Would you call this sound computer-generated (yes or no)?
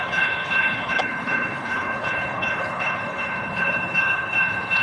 yes